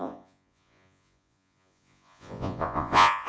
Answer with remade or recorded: remade